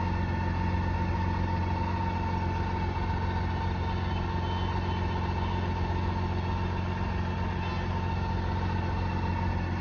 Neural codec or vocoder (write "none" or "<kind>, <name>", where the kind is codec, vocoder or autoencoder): none